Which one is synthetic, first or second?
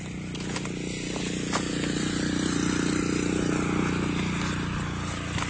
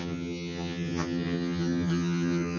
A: second